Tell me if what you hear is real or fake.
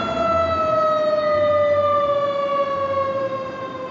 real